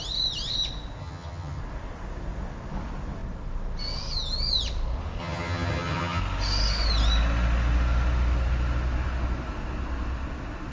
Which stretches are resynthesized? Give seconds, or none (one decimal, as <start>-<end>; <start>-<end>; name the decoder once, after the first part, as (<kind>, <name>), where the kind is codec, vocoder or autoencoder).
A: 1.0-1.6 (vocoder, HiFi-GAN); 5.2-6.2